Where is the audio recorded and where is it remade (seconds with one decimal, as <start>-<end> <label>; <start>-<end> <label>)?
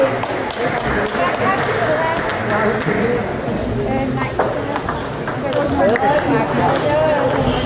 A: 0.0-7.7 recorded